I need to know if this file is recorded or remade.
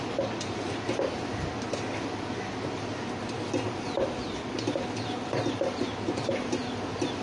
recorded